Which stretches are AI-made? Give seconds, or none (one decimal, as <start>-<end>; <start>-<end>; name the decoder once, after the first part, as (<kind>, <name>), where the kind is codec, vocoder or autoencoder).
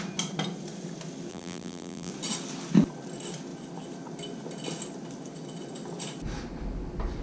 1.3-2.1 (vocoder, BigVGAN v2)